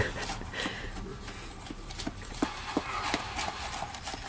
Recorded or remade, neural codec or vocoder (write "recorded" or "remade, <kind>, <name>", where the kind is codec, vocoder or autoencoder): recorded